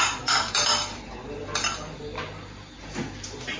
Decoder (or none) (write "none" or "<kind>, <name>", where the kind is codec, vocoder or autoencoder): none